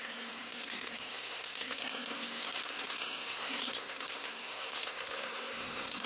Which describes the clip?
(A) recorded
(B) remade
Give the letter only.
B